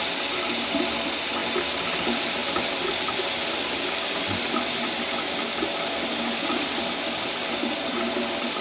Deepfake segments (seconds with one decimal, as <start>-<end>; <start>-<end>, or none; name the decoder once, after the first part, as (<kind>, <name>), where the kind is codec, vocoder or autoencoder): 2.4-3.2 (vocoder, BigVGAN v2)